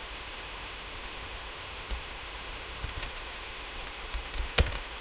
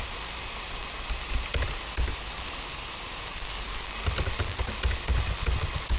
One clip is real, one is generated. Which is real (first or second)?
second